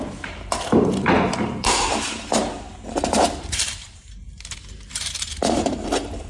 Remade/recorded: remade